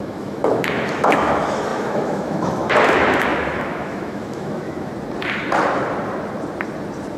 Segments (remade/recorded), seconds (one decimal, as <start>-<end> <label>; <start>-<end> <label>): 0.0-4.9 remade; 4.9-7.2 recorded

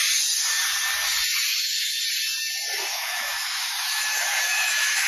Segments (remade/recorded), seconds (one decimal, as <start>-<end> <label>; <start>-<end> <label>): 0.0-1.5 recorded; 1.5-2.0 remade; 2.0-2.9 recorded; 2.9-5.1 remade

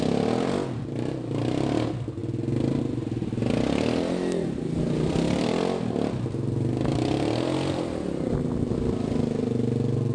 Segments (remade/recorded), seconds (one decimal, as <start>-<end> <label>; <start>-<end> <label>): 0.0-10.1 recorded

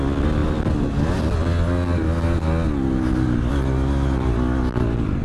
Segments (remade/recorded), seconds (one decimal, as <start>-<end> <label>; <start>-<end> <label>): 0.0-5.2 recorded

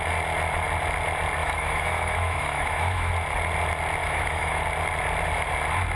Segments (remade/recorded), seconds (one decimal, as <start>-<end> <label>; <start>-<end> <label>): 0.0-1.4 recorded; 1.4-3.1 remade; 3.1-4.0 recorded; 4.0-4.6 remade; 4.6-6.0 recorded

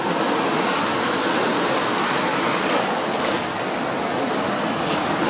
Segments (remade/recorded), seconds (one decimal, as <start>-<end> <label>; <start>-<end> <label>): 0.0-5.3 recorded